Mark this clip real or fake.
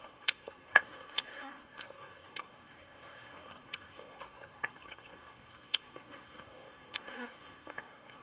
fake